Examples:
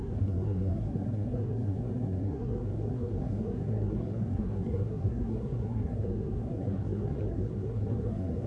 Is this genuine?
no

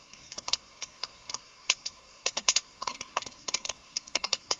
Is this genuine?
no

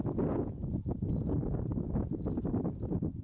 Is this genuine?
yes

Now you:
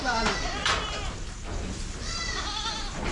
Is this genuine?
yes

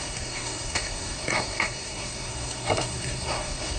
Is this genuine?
no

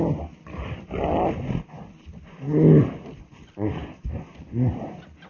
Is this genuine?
yes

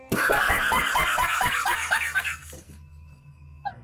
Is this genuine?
no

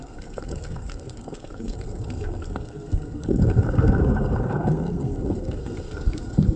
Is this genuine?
no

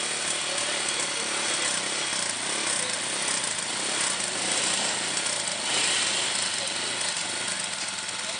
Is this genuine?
yes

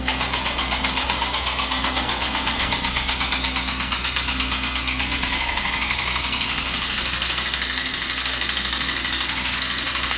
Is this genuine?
no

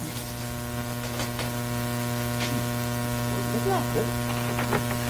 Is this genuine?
yes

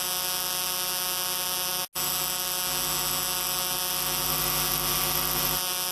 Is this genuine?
yes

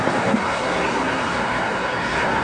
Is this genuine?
no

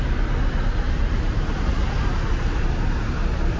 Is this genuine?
yes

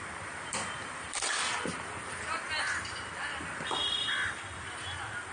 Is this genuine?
yes